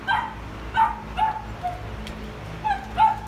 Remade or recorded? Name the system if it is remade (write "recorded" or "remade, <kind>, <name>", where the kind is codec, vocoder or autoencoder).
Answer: recorded